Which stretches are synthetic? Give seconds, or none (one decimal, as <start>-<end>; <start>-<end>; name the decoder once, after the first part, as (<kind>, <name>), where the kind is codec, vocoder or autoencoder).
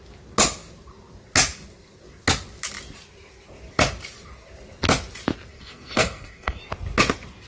5.5-6.6 (codec, SNAC)